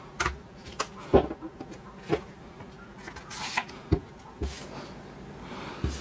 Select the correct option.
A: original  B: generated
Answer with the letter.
A